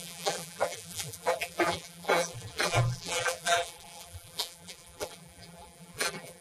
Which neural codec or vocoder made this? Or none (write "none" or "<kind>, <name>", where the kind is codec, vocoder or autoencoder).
vocoder, BigVGAN v2